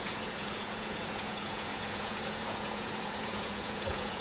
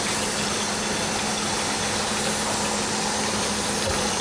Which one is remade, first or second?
first